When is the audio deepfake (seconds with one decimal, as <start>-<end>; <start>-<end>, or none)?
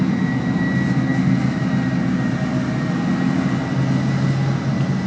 none